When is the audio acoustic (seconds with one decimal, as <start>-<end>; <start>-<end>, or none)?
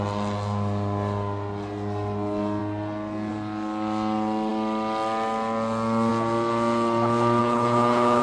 0.0-7.4